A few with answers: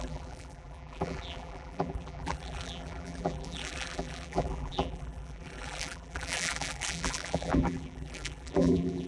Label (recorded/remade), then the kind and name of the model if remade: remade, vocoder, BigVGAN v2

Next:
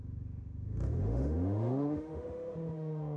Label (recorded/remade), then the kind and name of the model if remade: remade, autoencoder, DAC-VAE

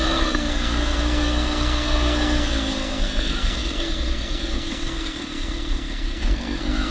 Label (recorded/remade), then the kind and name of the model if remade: remade, codec, SNAC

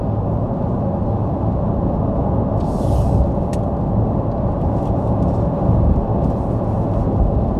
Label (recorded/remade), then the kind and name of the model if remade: recorded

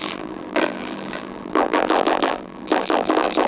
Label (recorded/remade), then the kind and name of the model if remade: remade, vocoder, BigVGAN v2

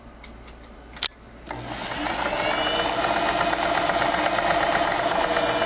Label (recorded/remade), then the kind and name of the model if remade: recorded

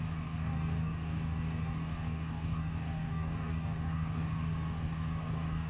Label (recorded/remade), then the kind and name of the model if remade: remade, codec, DAC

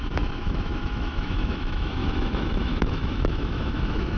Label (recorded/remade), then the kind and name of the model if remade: remade, autoencoder, DAC-VAE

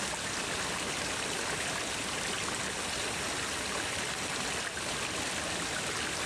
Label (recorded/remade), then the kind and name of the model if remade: recorded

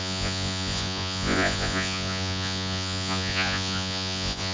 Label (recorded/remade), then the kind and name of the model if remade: remade, vocoder, Vocos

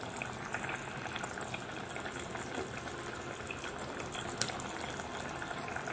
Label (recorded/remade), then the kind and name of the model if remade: recorded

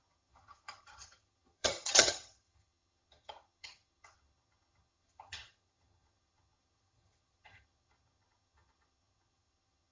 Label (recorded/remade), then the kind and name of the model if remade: remade, vocoder, HiFi-GAN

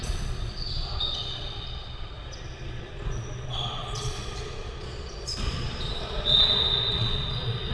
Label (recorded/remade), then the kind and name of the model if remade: remade, vocoder, Vocos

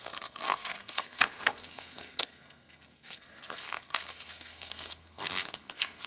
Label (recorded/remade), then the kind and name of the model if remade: remade, codec, SNAC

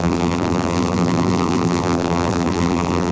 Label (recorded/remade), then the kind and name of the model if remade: remade, vocoder, BigVGAN v2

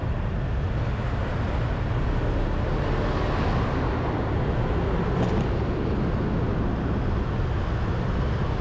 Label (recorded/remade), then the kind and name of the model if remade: recorded